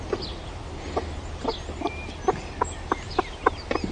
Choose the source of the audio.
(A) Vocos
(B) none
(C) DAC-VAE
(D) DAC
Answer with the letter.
B